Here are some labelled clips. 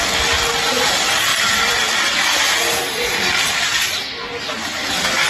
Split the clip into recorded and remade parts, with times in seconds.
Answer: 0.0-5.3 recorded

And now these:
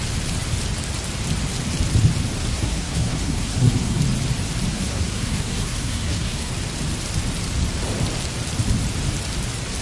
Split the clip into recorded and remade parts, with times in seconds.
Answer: 0.0-2.5 recorded; 2.5-4.0 remade; 4.0-4.7 recorded; 4.7-6.5 remade; 6.5-9.8 recorded